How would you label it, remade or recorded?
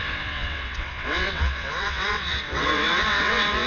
remade